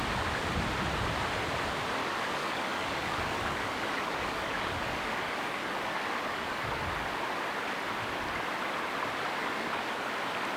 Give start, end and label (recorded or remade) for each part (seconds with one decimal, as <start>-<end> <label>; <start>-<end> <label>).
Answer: 0.0-2.0 recorded; 2.0-6.8 remade; 6.8-9.4 recorded; 9.4-10.1 remade; 10.1-10.6 recorded

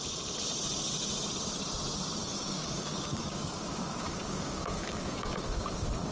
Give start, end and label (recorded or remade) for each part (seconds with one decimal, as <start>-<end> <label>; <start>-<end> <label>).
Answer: 0.0-2.2 recorded; 2.2-6.1 remade